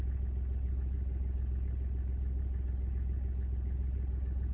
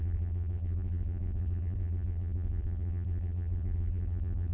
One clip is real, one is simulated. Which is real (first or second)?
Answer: first